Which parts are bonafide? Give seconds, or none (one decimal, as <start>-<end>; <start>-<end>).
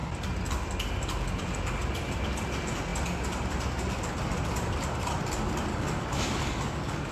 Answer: 0.0-5.7